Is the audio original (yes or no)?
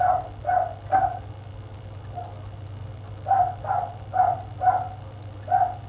yes